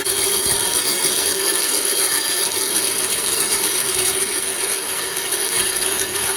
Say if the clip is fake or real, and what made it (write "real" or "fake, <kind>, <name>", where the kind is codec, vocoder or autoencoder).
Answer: fake, codec, SNAC